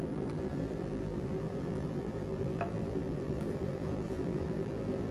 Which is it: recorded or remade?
remade